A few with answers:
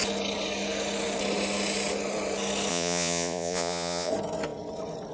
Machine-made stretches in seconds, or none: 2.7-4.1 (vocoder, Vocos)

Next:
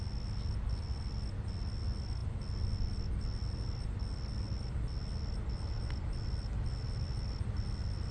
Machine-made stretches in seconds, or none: none